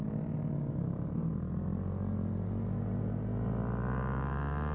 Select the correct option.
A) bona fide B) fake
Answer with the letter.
A